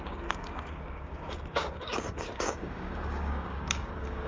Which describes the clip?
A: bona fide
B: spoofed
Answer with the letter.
B